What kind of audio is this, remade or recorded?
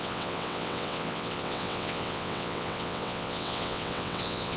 remade